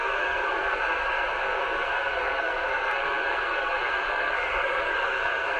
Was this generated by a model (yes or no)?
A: yes